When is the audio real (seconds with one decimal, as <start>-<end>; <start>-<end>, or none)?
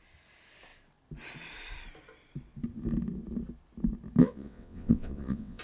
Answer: 0.0-4.2